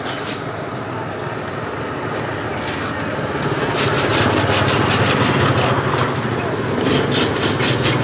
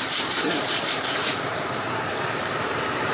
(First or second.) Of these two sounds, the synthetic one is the second